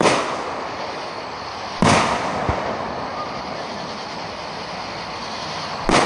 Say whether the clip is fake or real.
real